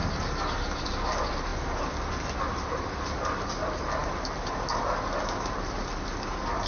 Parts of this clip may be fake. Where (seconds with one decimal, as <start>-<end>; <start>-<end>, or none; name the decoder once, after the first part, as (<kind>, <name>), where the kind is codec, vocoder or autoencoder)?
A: none